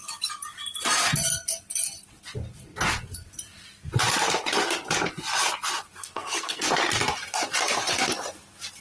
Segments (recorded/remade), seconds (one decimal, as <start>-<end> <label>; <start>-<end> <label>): 0.0-6.0 recorded; 6.0-6.6 remade; 6.6-8.8 recorded